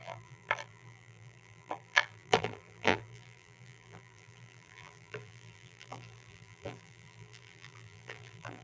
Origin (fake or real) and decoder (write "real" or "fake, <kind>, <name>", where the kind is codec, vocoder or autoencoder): fake, vocoder, BigVGAN v2